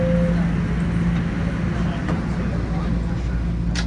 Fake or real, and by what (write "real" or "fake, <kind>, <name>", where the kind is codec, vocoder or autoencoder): real